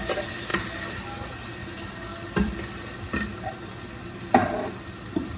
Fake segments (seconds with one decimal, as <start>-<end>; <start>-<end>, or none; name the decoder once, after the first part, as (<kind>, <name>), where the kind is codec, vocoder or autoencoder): none